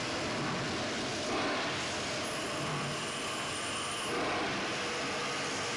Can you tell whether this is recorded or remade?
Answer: recorded